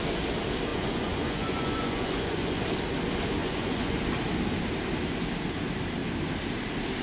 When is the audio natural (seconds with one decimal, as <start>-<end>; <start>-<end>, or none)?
0.0-0.7; 2.6-3.4; 4.0-7.0